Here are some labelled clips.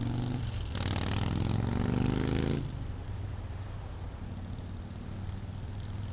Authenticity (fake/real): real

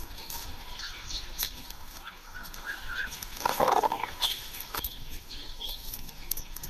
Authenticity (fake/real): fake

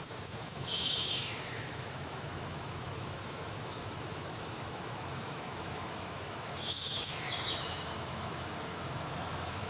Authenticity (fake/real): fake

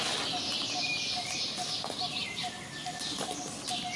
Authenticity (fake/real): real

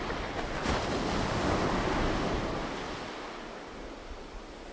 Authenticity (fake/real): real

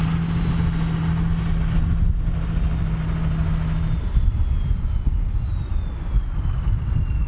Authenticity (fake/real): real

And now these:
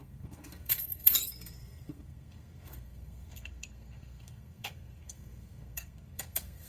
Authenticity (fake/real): fake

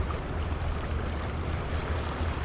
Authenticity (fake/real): real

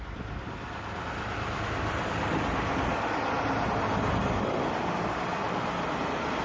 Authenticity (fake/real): real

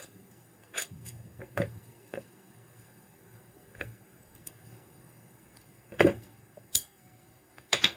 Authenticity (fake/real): fake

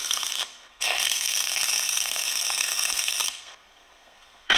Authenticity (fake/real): fake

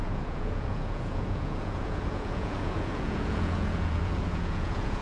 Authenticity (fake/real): fake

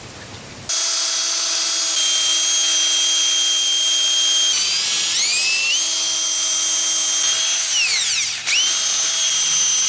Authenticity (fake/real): real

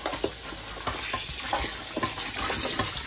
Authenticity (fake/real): real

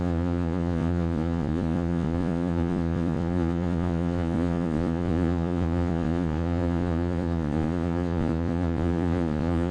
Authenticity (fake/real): fake